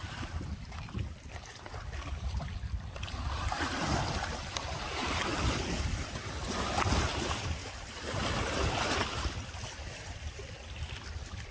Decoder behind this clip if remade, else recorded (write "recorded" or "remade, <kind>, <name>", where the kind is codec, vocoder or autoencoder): remade, vocoder, BigVGAN v2